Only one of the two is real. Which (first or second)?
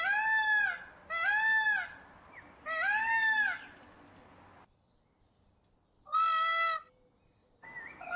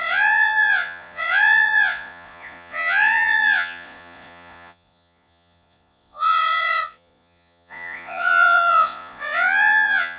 first